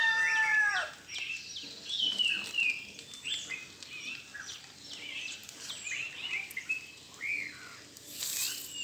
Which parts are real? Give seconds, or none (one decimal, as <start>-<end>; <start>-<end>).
0.0-8.8